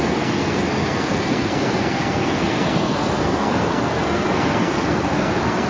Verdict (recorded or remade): remade